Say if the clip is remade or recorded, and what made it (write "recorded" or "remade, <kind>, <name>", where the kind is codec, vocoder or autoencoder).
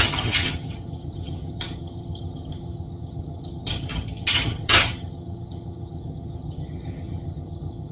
remade, vocoder, HiFi-GAN